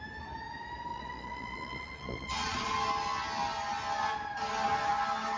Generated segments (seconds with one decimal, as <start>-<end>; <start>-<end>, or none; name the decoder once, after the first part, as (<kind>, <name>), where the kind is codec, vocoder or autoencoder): 0.9-2.7 (vocoder, Vocos)